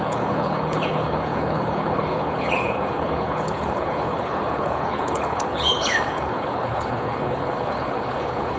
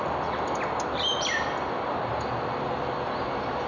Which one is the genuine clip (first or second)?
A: second